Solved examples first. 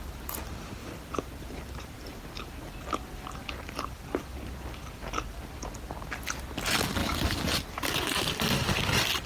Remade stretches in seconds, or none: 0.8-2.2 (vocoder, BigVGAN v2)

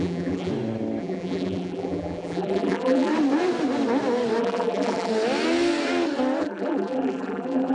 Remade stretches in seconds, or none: 0.0-0.5 (vocoder, BigVGAN v2); 1.0-3.1; 4.4-5.1; 6.4-7.7